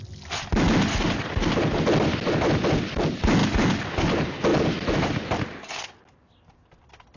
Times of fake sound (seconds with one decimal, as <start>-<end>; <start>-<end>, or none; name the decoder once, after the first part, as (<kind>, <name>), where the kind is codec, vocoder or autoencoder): 4.5-5.4 (vocoder, BigVGAN v2)